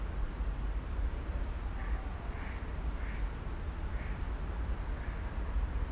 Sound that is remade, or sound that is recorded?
recorded